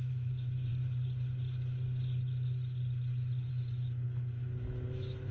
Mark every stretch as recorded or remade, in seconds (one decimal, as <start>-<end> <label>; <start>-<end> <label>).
0.0-0.7 remade; 0.7-3.5 recorded; 3.5-5.3 remade